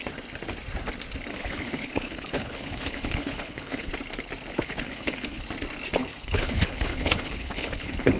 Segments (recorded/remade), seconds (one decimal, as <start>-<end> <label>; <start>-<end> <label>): 0.0-1.3 recorded; 1.3-3.9 remade; 3.9-4.5 recorded; 4.5-5.4 remade; 5.4-6.0 recorded; 6.0-8.2 remade